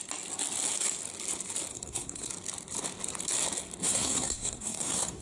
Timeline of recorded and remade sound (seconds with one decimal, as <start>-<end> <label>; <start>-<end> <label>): 0.0-1.7 recorded; 1.7-2.3 remade; 2.3-3.8 recorded; 3.8-5.2 remade